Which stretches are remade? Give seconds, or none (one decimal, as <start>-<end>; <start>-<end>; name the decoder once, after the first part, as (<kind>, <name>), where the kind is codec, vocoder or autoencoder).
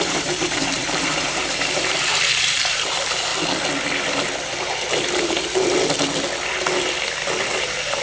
0.0-3.3 (vocoder, BigVGAN v2); 7.5-8.0